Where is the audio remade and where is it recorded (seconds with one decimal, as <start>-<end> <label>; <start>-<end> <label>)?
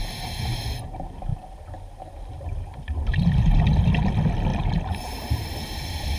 0.0-4.5 recorded; 4.5-5.3 remade; 5.3-6.2 recorded